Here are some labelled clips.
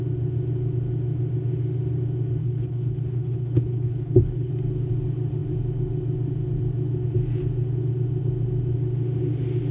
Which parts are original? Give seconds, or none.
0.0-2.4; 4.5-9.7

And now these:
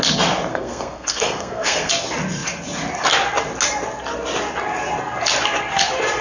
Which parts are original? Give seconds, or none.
0.0-0.5; 1.9-6.2

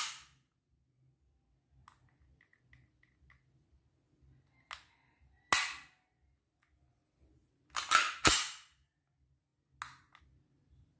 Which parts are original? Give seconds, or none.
0.0-11.0

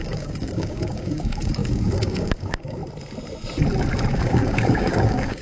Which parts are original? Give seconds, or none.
2.8-4.1

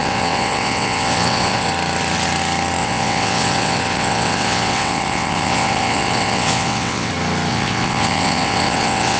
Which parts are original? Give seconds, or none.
1.7-2.8; 7.1-7.5

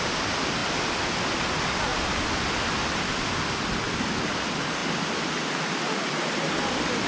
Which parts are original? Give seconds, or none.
0.0-7.1

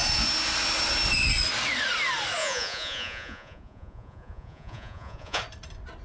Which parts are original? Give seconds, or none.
0.0-2.4; 5.4-6.0